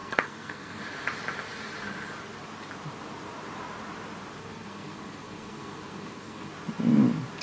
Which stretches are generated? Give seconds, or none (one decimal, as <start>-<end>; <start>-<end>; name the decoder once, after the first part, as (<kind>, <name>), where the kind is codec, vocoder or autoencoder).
0.0-0.8 (codec, SNAC); 4.4-6.5